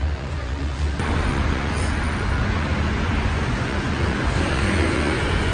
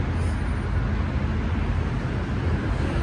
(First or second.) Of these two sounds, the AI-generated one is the first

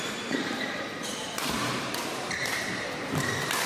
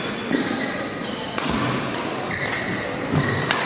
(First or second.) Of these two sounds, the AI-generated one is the first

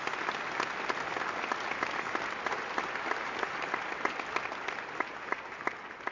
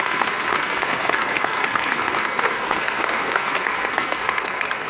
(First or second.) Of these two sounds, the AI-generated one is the second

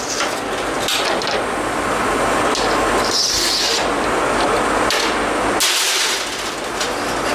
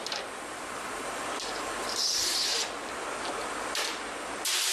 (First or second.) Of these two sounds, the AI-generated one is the second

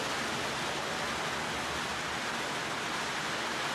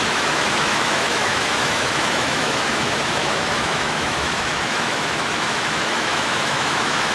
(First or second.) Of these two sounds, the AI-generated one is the second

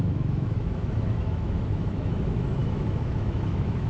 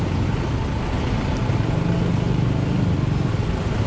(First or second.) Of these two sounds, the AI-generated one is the first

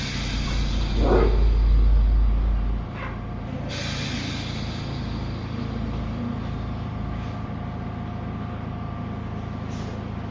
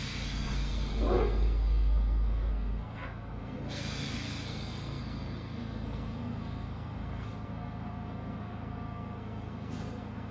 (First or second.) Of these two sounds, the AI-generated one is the second